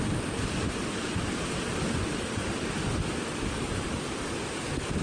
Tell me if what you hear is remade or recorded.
recorded